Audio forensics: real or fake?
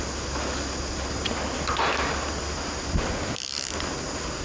real